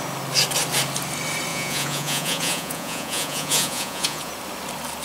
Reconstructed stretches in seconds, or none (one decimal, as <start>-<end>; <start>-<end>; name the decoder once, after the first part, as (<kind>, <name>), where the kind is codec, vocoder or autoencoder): 1.5-4.3 (vocoder, Vocos)